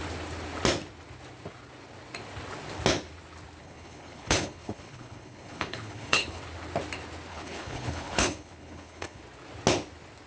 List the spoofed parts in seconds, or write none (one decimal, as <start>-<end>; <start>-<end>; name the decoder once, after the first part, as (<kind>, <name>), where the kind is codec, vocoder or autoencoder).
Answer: 3.6-6.4 (codec, HILCodec); 7.3-9.2